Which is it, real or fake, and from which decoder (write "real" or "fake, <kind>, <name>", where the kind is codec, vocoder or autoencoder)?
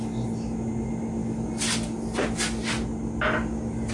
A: real